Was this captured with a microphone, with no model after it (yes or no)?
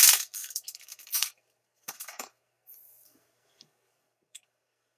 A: no